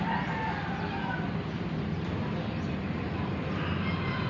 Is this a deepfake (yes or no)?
no